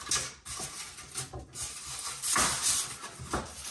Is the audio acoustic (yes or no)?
yes